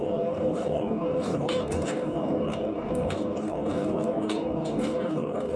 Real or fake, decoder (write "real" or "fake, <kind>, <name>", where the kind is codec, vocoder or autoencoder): fake, codec, DAC